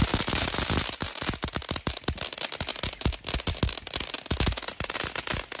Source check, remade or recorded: recorded